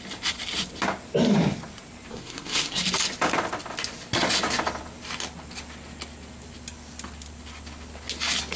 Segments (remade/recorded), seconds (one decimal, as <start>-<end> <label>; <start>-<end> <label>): 0.0-2.1 recorded; 2.1-2.8 remade; 2.8-8.6 recorded